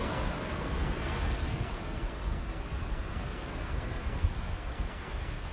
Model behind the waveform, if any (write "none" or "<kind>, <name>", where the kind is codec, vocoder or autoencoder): codec, SNAC